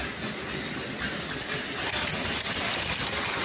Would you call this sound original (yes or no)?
yes